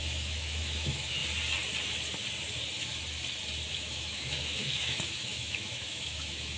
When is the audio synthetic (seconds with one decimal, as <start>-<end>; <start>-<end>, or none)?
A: 0.0-1.2; 3.7-6.6